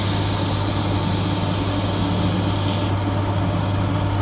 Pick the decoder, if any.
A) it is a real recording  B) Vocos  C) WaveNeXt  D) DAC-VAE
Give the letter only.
A